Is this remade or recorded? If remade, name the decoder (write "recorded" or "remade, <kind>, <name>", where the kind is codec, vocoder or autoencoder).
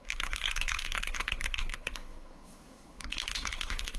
remade, codec, SNAC